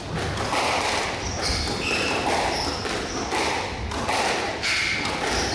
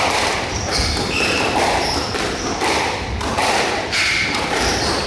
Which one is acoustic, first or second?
first